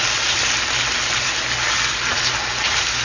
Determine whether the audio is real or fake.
real